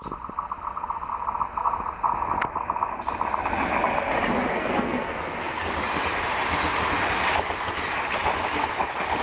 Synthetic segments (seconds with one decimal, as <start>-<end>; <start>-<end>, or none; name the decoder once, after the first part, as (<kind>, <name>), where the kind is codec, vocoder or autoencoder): 4.5-5.6 (codec, SNAC)